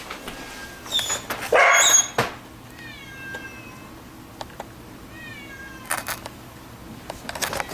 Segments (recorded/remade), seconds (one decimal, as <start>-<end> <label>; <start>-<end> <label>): 0.0-7.7 recorded